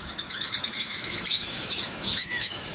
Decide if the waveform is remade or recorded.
remade